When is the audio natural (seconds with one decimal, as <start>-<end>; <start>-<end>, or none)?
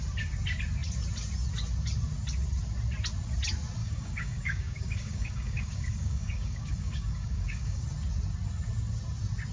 0.0-3.8; 7.8-9.5